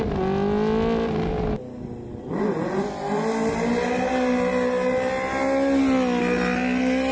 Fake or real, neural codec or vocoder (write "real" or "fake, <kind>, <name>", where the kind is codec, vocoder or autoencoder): real